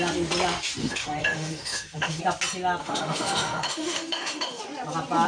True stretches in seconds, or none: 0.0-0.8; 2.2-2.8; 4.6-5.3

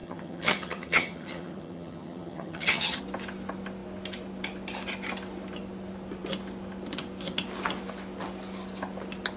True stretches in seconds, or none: 3.0-9.4

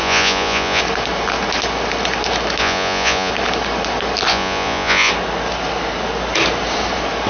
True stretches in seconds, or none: 0.8-2.6; 3.3-4.3; 5.1-7.3